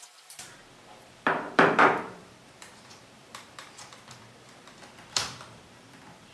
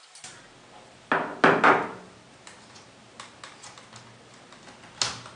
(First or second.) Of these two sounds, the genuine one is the second